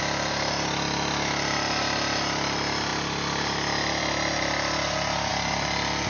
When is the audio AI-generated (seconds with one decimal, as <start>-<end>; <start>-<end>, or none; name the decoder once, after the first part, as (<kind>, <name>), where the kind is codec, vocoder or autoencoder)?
none